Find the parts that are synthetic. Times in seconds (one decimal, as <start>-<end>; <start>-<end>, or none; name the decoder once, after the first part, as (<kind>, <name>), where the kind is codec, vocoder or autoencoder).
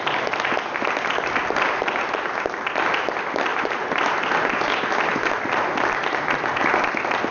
3.5-4.6 (vocoder, BigVGAN v2)